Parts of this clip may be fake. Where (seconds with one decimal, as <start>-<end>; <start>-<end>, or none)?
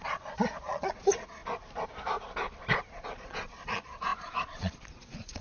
0.0-1.4; 2.8-5.4